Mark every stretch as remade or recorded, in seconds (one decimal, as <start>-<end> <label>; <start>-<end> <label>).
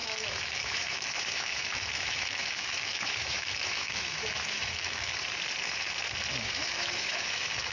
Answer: 0.0-5.1 remade; 5.1-6.3 recorded; 6.3-7.7 remade